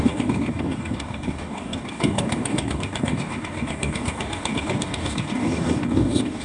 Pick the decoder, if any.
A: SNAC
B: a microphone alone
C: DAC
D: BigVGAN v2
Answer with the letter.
C